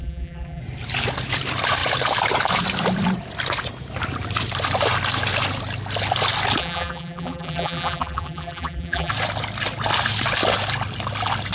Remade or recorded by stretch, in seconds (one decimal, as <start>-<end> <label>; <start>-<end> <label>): 0.0-0.6 remade; 0.6-6.6 recorded; 6.6-9.1 remade; 9.1-11.5 recorded